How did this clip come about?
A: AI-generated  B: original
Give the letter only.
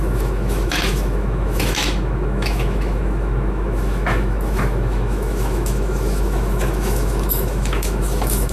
A